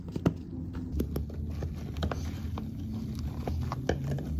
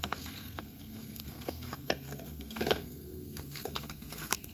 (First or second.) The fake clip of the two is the second